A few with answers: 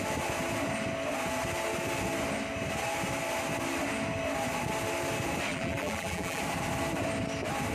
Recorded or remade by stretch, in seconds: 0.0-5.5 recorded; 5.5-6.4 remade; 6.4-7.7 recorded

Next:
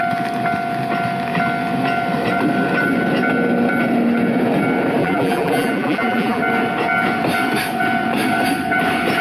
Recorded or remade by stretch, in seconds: 0.0-5.0 recorded; 5.0-6.4 remade; 6.4-9.2 recorded

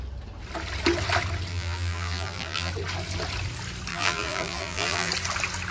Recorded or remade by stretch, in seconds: 0.0-1.5 recorded; 1.5-2.7 remade; 2.7-3.9 recorded; 3.9-5.1 remade; 5.1-5.7 recorded

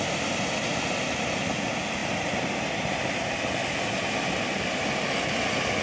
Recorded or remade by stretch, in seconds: 0.0-5.8 recorded

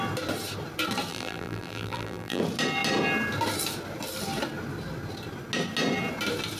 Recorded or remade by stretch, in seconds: 0.0-1.1 recorded; 1.1-2.4 remade; 2.4-6.6 recorded

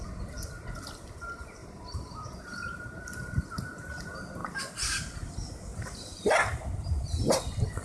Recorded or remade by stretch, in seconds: 0.0-1.6 recorded; 1.6-3.0 remade; 3.0-5.7 recorded; 5.7-7.1 remade; 7.1-7.8 recorded